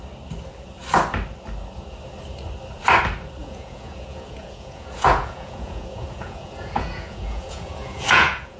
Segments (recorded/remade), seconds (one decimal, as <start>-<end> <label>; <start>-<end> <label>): 0.0-3.4 recorded; 3.4-8.6 remade